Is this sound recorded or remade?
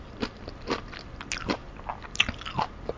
recorded